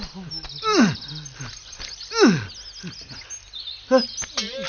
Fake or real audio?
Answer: real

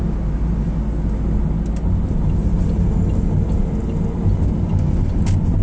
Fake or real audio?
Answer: real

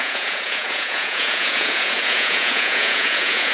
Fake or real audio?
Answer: fake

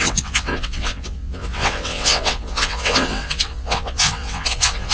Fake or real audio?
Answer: fake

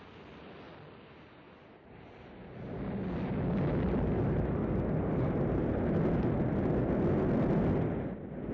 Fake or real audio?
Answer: real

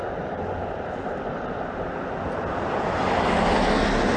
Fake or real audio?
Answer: real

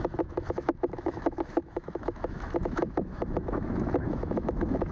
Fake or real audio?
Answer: fake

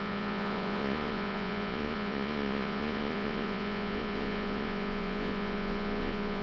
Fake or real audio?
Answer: fake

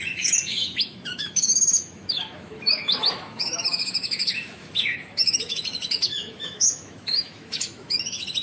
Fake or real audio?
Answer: fake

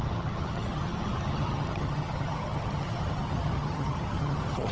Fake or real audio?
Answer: fake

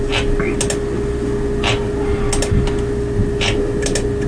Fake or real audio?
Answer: real